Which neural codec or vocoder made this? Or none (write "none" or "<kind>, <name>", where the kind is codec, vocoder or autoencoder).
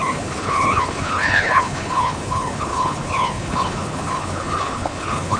codec, HILCodec